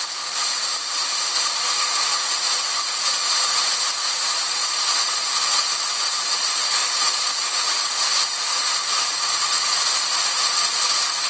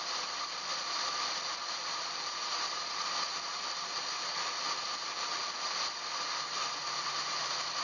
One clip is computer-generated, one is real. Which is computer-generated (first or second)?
first